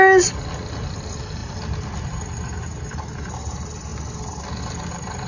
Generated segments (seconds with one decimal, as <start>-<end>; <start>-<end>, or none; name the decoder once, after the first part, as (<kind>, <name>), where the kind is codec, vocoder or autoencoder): none